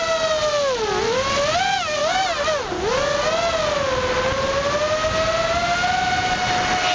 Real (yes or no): yes